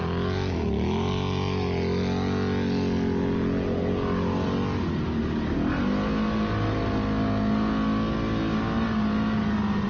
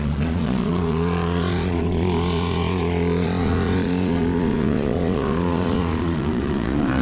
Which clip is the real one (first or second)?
first